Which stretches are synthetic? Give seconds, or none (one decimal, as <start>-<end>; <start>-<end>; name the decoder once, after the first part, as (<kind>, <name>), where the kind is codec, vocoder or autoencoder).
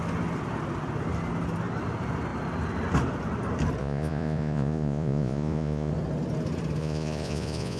3.8-5.9 (vocoder, Vocos); 6.8-7.8